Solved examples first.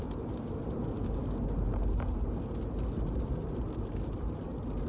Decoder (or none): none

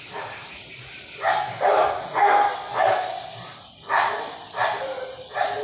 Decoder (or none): none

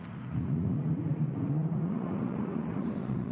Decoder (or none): vocoder, Vocos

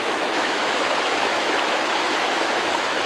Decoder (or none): autoencoder, DAC-VAE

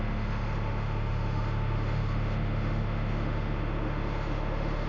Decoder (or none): autoencoder, DAC-VAE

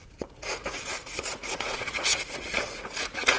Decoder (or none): vocoder, Vocos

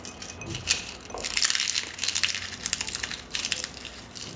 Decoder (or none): none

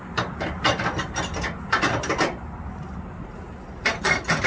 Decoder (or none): none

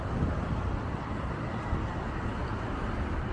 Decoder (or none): none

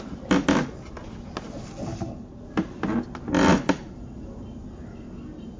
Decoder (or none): none